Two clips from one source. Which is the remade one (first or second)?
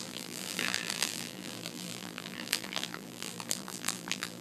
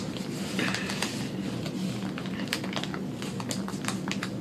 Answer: first